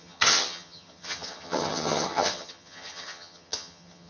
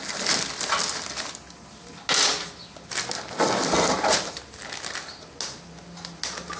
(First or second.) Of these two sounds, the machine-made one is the first